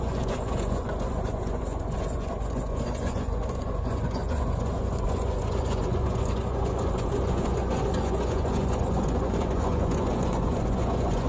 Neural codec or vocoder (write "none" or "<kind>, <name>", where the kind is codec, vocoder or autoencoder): vocoder, Vocos